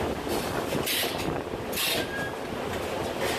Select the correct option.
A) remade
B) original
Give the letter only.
B